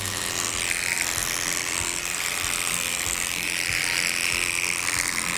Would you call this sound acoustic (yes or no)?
yes